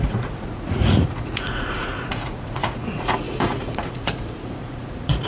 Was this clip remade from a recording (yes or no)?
yes